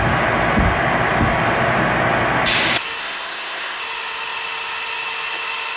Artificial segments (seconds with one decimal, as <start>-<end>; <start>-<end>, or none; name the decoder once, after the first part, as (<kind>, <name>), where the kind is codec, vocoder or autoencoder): 3.0-3.8 (codec, SNAC)